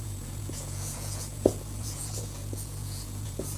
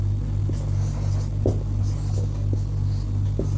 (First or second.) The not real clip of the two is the first